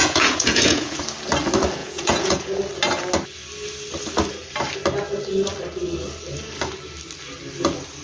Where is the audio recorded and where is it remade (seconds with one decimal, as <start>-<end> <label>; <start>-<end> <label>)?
0.0-1.0 remade; 1.0-1.8 recorded; 1.8-2.6 remade; 2.6-8.0 recorded